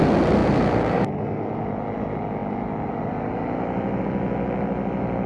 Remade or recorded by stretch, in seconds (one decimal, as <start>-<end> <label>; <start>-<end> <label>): 0.0-5.3 recorded